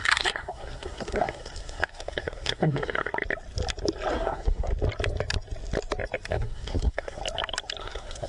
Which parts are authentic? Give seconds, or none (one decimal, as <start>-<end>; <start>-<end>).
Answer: 3.1-4.1; 4.7-6.3; 7.2-7.8